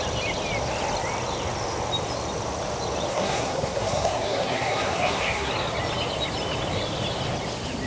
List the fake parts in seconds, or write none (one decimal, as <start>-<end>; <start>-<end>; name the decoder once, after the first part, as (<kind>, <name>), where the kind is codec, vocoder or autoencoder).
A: 3.1-5.5 (codec, SNAC)